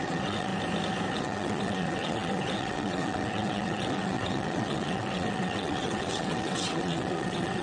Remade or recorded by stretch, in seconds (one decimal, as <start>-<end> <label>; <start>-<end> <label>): 0.0-0.5 remade; 0.5-1.1 recorded; 1.1-7.6 remade